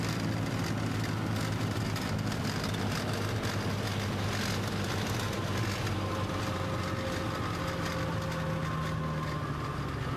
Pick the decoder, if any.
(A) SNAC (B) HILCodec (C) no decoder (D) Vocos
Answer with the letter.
C